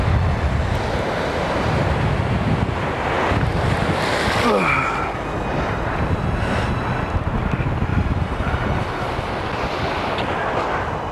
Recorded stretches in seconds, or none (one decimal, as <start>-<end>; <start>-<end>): 0.0-11.1